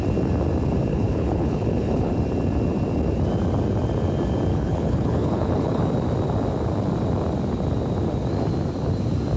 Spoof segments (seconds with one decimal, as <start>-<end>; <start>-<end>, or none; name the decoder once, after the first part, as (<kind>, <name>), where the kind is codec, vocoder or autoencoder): 0.9-2.1 (codec, HILCodec); 4.5-5.8